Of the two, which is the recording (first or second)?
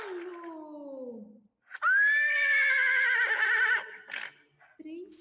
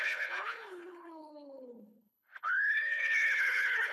first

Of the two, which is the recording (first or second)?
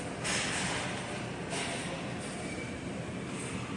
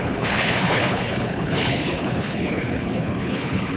first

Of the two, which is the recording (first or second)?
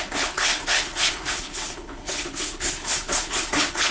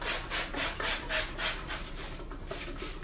second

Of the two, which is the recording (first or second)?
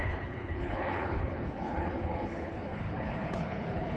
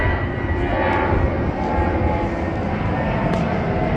second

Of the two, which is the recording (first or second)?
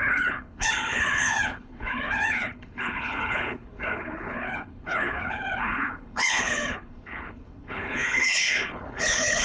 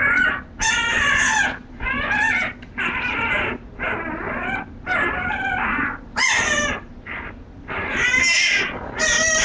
second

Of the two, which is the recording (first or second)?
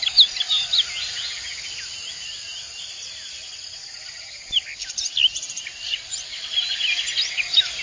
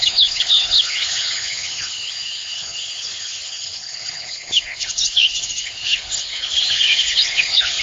first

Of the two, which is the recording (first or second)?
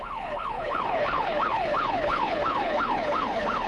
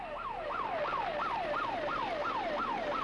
second